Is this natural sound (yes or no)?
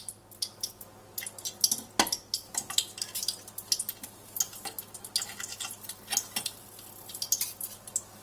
yes